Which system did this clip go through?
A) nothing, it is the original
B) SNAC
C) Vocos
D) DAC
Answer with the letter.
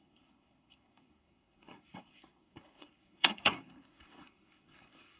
B